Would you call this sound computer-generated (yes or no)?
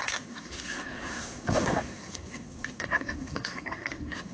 yes